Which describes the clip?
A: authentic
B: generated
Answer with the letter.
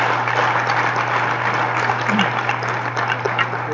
A